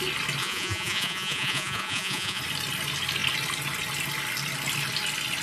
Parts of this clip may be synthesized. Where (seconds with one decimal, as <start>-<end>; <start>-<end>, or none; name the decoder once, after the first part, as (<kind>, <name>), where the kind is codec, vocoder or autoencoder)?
0.4-2.4 (vocoder, Vocos)